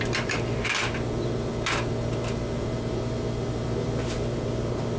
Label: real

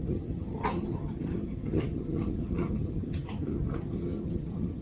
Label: fake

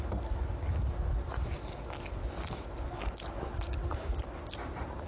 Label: real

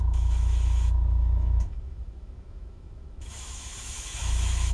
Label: fake